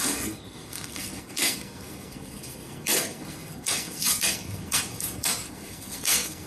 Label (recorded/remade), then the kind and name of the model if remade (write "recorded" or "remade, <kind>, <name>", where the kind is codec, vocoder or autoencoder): remade, codec, SNAC